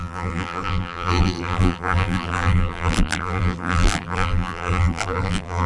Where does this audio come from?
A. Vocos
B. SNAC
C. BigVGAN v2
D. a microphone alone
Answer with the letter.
C